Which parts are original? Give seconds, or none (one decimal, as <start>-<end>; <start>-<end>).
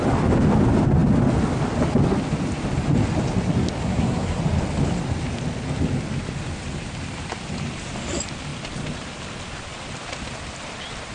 0.0-3.8; 4.4-11.1